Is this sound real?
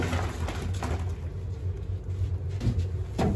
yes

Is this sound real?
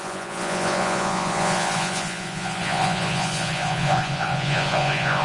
no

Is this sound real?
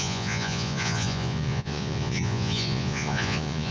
no